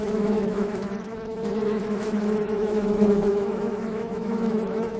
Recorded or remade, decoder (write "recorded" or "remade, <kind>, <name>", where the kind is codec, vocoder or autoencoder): remade, autoencoder, DAC-VAE